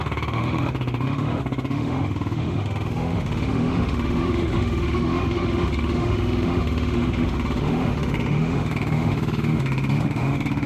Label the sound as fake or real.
fake